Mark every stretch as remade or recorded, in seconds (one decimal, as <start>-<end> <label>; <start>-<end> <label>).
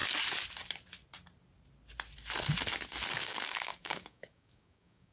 0.0-3.1 recorded; 3.1-5.1 remade